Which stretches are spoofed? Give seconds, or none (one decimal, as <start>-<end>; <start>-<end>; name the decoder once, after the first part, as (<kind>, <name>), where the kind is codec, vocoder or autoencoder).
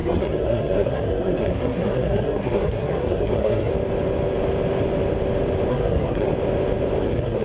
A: 0.0-3.7 (codec, SNAC); 5.7-6.3; 7.0-7.4